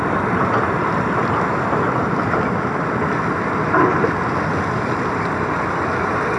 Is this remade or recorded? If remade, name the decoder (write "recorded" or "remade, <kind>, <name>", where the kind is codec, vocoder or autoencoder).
recorded